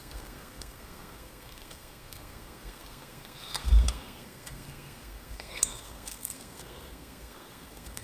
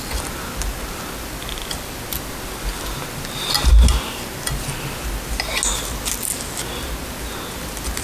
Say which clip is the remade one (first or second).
first